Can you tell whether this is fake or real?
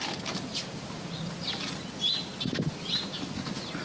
real